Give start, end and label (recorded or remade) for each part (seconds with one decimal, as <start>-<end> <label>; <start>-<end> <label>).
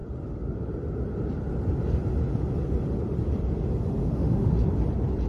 0.0-4.0 recorded; 4.0-4.5 remade; 4.5-5.3 recorded